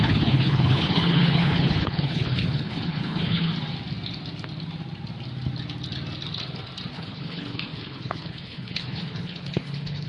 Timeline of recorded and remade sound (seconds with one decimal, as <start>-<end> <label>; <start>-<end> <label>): 0.0-3.5 remade; 3.5-6.9 recorded; 6.9-10.1 remade

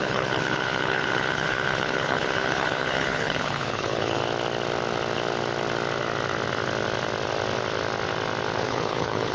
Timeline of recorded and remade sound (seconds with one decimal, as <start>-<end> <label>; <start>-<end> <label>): 0.0-4.2 remade; 4.2-8.6 recorded; 8.6-9.3 remade